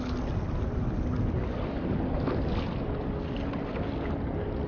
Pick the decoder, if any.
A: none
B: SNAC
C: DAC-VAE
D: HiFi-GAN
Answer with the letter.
A